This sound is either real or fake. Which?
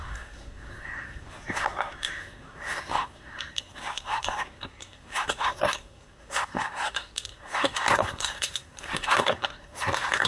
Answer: fake